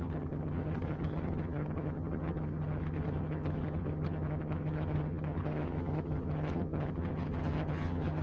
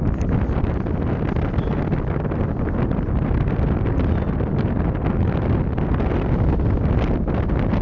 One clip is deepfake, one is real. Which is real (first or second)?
second